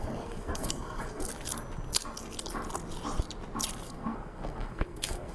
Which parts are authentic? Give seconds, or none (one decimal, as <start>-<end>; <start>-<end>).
1.3-3.8